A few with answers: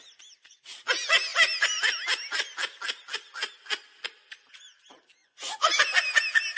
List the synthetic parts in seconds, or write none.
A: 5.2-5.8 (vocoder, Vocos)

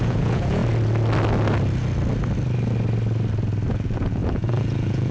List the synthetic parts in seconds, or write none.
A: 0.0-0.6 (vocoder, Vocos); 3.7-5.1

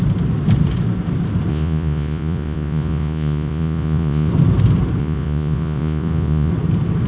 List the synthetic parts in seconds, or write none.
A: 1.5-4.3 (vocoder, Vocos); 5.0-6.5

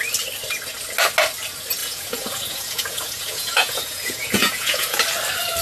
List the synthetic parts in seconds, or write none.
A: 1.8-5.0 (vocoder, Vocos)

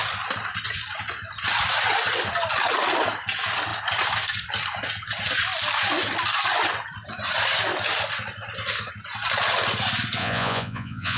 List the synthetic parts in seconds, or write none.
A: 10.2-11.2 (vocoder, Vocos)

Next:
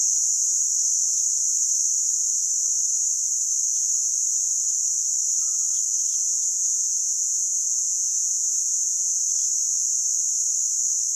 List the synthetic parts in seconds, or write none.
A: 6.2-9.2 (vocoder, Vocos)

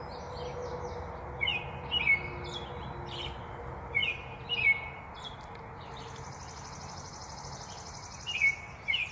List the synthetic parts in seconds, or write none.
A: none

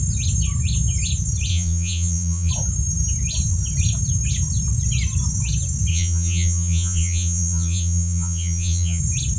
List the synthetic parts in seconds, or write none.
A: 1.5-2.5 (vocoder, Vocos); 5.9-9.0